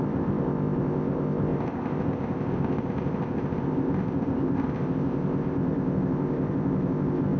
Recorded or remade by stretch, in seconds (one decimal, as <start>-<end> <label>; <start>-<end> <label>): 0.0-7.4 remade